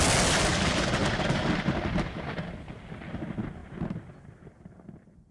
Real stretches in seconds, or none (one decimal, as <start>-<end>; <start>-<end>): 0.0-5.3